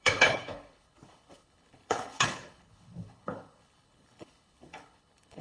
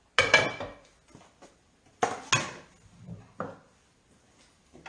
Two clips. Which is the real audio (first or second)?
second